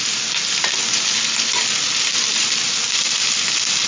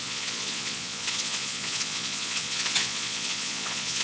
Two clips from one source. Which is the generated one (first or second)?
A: second